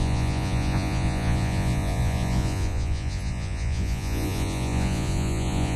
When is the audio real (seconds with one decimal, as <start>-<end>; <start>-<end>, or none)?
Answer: none